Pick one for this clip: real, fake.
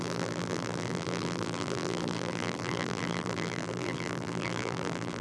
fake